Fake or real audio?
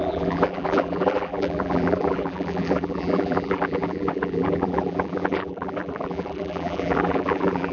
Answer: fake